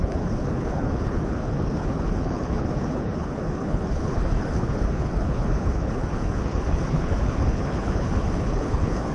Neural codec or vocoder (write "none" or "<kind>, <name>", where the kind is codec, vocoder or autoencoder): codec, HILCodec